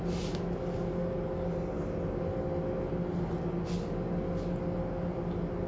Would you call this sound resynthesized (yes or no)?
no